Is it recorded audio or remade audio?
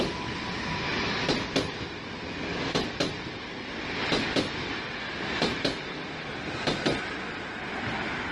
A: recorded